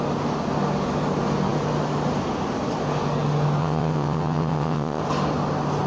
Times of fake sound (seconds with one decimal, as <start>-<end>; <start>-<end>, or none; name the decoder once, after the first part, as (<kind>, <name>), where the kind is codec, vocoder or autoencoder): 3.6-5.0 (vocoder, WaveNeXt)